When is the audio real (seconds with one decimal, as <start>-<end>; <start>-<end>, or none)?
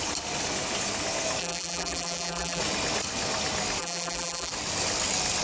0.0-1.4; 2.6-3.8; 4.5-5.4